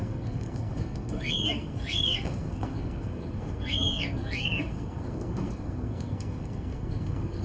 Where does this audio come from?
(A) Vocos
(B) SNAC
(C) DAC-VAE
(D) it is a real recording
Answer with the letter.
B